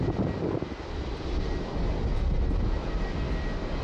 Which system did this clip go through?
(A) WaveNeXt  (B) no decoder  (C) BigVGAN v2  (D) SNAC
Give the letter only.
B